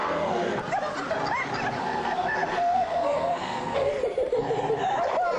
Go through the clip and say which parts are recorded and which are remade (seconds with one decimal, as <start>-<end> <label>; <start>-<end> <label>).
0.0-0.6 remade; 0.6-1.8 recorded; 1.8-3.9 remade; 3.9-5.4 recorded